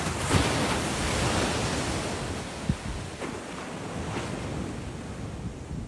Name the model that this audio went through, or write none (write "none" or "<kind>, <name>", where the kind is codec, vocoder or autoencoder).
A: none